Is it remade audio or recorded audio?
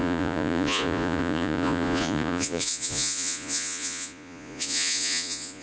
remade